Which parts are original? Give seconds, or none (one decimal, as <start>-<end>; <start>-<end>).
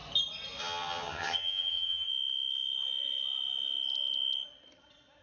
0.0-0.6; 2.1-5.2